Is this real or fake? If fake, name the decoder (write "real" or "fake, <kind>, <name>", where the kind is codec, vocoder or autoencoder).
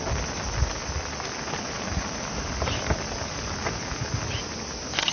real